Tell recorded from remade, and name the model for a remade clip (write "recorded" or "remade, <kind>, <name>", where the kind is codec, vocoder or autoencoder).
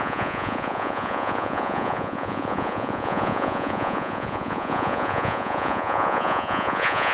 remade, vocoder, Vocos